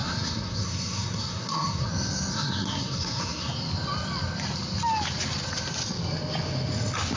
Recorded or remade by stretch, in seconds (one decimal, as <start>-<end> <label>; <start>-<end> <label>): 0.0-1.9 remade; 1.9-2.3 recorded; 2.3-3.5 remade; 3.5-7.2 recorded